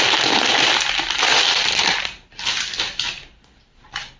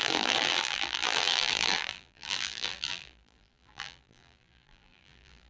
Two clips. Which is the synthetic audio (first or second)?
second